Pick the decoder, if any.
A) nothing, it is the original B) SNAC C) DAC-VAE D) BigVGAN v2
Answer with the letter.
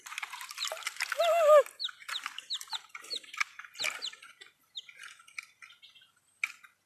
A